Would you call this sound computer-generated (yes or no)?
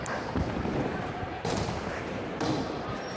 yes